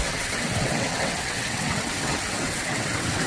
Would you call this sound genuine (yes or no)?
no